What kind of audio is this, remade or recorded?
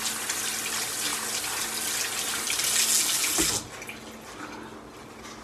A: recorded